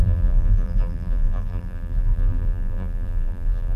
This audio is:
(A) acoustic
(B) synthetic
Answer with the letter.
B